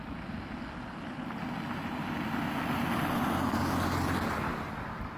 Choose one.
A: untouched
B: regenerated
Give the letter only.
A